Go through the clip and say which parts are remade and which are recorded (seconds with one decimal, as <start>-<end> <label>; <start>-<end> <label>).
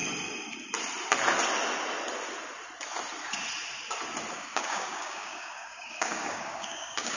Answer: 0.0-4.3 recorded; 4.3-7.2 remade